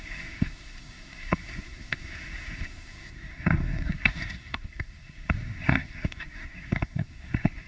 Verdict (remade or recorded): remade